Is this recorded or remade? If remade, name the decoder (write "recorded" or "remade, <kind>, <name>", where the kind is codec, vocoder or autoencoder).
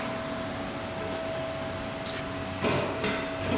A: recorded